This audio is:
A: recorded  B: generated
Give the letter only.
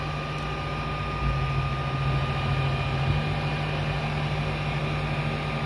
A